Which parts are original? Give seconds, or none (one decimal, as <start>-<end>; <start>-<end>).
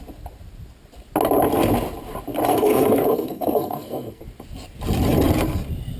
0.0-2.5; 4.2-6.0